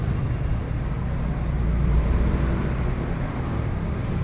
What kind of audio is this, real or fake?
fake